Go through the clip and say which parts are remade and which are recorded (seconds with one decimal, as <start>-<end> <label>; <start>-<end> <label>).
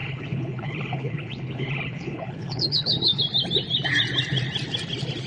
0.0-3.2 remade; 3.2-5.3 recorded